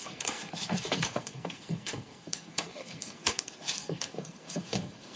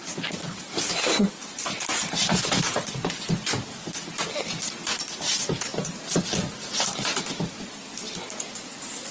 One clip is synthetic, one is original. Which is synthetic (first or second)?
first